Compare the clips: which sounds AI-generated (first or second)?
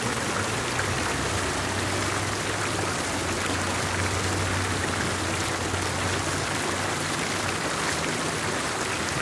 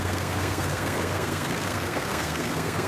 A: second